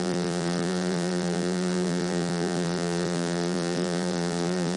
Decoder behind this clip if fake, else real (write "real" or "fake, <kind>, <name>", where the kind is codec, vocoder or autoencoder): fake, vocoder, BigVGAN v2